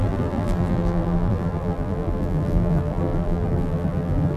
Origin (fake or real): fake